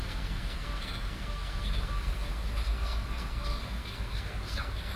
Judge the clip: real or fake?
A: fake